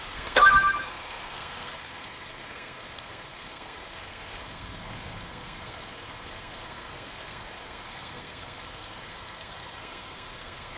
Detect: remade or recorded remade